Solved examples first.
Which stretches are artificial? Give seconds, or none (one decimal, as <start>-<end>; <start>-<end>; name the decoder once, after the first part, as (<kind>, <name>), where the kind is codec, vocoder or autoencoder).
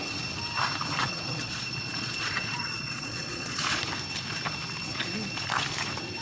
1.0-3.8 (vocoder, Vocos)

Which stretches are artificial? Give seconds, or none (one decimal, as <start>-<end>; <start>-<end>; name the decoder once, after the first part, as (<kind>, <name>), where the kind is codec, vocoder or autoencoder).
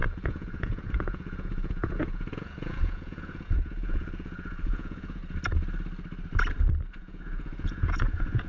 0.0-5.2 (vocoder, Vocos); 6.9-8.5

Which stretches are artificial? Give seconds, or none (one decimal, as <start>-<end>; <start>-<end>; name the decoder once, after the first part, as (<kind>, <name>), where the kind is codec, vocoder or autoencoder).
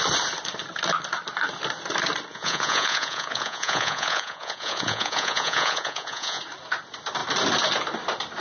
2.3-6.4 (vocoder, Vocos)